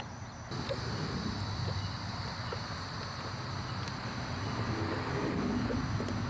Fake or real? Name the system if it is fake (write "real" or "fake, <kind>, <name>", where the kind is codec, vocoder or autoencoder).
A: real